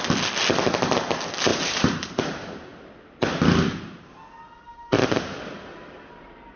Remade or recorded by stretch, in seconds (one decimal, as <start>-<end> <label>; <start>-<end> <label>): 0.0-1.5 recorded; 1.5-2.2 remade; 2.2-6.6 recorded